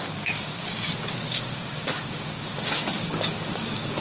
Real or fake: fake